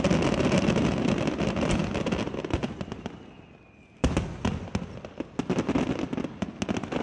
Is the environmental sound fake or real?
real